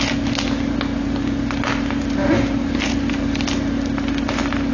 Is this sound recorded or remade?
recorded